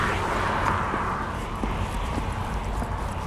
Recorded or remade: recorded